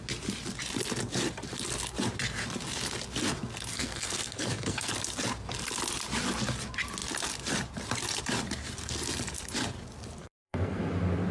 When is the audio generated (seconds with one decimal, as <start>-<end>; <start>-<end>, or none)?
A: 3.7-4.9; 10.2-10.8